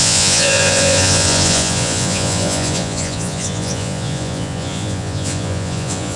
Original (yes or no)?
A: no